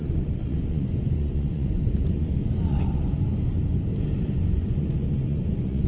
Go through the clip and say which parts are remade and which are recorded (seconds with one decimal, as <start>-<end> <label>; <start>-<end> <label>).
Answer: 0.0-3.3 remade; 3.3-4.3 recorded; 4.3-5.9 remade